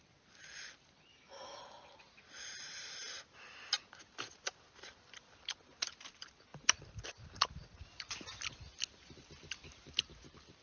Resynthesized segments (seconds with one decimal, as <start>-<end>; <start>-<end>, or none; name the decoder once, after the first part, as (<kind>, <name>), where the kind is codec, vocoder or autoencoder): 1.1-1.6 (autoencoder, DAC-VAE)